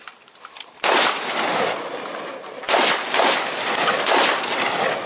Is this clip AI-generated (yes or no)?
yes